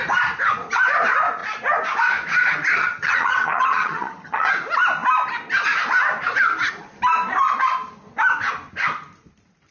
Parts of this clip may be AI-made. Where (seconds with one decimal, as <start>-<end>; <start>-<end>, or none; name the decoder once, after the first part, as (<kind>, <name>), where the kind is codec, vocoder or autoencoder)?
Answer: 2.8-4.5 (vocoder, HiFi-GAN)